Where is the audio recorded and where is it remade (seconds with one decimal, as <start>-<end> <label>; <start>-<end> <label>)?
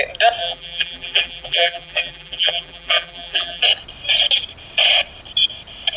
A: 0.0-0.4 recorded; 0.4-3.6 remade; 3.6-6.0 recorded